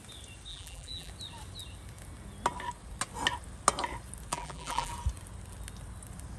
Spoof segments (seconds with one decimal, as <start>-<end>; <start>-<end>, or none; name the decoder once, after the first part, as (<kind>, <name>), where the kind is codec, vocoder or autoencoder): 0.5-1.1 (vocoder, BigVGAN v2); 4.3-4.9

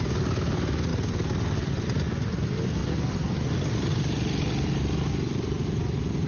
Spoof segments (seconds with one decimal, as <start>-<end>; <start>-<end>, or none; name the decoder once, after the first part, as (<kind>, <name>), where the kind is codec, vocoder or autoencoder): none

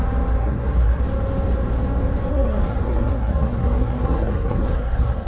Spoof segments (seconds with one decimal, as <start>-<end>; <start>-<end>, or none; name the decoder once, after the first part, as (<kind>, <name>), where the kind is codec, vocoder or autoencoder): 0.4-1.0 (codec, SNAC); 2.3-5.3

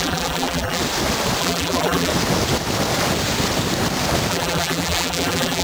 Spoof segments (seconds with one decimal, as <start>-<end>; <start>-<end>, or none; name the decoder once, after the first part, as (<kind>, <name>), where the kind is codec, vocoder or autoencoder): 0.0-0.8 (vocoder, BigVGAN v2); 1.4-2.1; 4.3-5.6

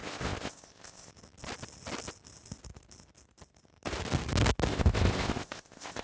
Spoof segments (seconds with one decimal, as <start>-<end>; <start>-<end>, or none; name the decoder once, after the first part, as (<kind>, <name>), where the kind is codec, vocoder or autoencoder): 0.0-1.1 (codec, ZipCodec); 4.7-6.0

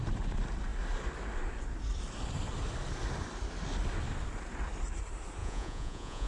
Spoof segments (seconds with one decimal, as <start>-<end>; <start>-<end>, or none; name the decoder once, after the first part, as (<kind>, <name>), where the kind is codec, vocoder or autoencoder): 5.4-6.3 (vocoder, Vocos)

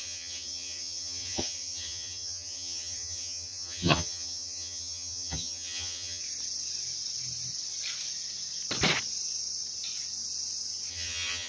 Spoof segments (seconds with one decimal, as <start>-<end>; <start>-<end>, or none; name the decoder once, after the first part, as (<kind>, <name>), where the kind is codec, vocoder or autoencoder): 0.0-6.2 (vocoder, HiFi-GAN); 10.9-11.5